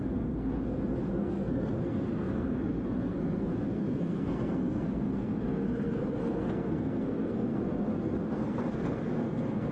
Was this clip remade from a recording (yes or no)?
yes